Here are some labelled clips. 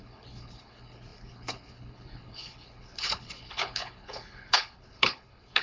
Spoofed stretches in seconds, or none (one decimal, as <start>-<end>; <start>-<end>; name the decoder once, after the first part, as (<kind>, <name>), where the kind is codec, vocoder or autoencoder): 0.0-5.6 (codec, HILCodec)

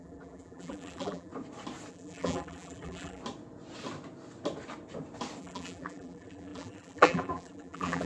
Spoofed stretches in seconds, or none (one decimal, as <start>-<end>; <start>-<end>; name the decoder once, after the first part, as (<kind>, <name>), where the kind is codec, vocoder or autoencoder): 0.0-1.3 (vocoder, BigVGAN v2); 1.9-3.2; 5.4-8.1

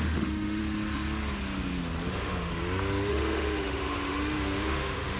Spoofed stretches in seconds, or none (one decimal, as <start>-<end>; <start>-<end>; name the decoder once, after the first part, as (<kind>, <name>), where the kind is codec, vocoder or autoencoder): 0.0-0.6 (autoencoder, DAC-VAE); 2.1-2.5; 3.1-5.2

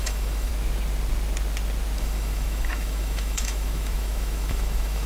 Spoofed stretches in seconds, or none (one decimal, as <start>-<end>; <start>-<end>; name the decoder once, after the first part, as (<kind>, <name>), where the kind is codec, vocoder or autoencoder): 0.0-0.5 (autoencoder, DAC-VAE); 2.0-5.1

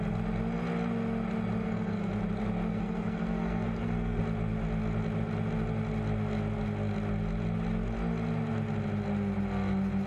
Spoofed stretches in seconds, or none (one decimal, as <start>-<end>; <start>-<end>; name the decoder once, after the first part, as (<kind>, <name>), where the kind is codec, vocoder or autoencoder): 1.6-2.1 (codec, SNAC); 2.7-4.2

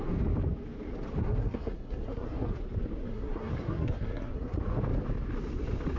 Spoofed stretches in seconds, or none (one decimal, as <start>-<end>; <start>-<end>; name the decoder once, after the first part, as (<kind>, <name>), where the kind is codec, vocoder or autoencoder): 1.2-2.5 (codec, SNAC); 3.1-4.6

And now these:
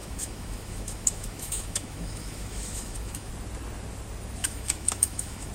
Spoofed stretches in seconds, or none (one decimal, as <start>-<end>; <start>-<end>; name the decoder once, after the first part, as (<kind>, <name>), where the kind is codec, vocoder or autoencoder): 0.0-3.3 (autoencoder, DAC-VAE); 4.4-5.5

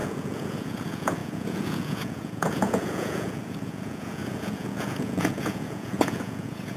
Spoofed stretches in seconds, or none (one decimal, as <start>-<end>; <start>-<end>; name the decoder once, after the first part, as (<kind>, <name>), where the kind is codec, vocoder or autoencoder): 0.0-6.8 (vocoder, Vocos)